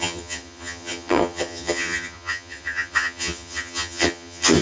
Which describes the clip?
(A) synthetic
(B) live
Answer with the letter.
A